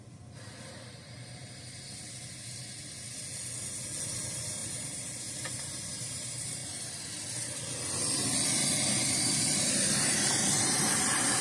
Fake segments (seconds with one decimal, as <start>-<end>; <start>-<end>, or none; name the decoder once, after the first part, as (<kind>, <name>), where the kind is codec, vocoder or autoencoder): 0.0-2.6 (vocoder, BigVGAN v2); 4.1-6.6; 10.6-11.4